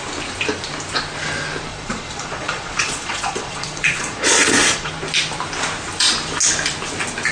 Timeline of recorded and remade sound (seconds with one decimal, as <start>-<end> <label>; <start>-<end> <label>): 0.0-1.7 recorded; 1.7-4.9 remade; 4.9-7.3 recorded